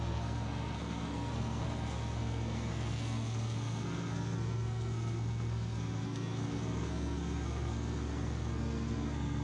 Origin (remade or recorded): remade